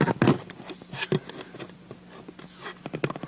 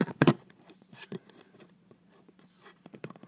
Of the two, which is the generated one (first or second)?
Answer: second